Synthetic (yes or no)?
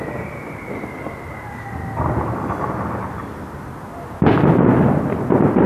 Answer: no